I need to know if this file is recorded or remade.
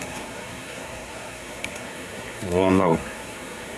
remade